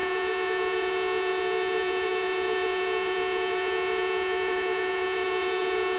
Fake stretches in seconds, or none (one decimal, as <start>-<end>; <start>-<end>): 0.0-6.0